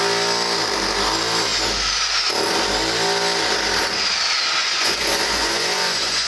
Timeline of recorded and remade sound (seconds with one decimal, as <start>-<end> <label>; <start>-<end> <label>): 0.0-4.6 recorded; 4.6-6.3 remade